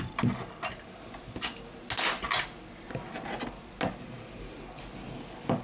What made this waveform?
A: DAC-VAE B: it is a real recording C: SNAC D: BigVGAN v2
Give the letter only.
B